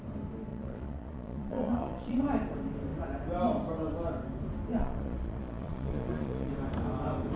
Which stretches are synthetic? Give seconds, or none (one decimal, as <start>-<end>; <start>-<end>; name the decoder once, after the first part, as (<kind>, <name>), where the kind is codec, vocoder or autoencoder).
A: 0.5-2.2 (vocoder, Vocos); 4.8-6.5

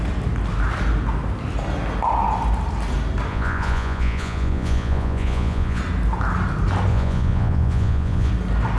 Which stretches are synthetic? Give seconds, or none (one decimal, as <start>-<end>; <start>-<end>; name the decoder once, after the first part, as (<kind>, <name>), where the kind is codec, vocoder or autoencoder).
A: 3.3-5.8 (vocoder, Vocos); 6.9-8.3

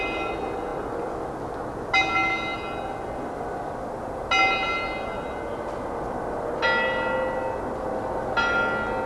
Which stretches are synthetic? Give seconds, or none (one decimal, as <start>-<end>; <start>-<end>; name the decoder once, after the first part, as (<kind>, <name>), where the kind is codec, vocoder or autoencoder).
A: none

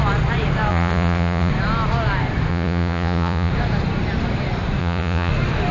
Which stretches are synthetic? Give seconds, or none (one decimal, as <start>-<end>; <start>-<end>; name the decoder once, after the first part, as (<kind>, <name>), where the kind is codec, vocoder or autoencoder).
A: 0.7-1.5 (vocoder, Vocos); 2.5-3.5; 4.8-5.3

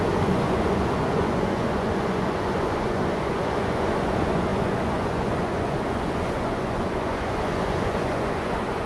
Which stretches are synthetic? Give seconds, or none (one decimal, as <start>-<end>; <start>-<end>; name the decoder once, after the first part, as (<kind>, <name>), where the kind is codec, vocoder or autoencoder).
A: 0.0-8.9 (vocoder, Vocos)

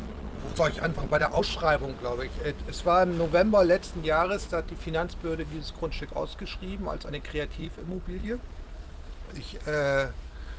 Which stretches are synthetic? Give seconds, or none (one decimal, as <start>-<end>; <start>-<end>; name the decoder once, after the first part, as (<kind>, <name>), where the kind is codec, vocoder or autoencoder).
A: 0.0-1.4 (vocoder, Vocos); 7.6-9.2